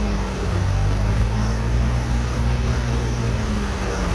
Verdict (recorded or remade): remade